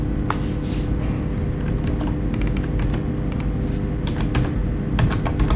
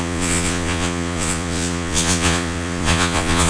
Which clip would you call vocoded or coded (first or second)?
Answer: second